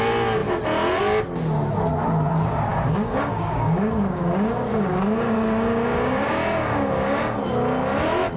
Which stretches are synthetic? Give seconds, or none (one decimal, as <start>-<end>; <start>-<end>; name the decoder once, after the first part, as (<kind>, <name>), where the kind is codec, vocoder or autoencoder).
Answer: 2.7-7.2 (codec, DAC)